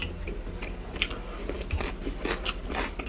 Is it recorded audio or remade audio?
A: recorded